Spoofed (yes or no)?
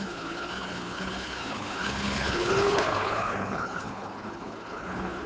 yes